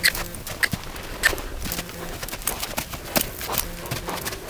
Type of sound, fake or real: real